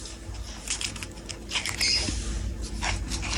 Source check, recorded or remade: recorded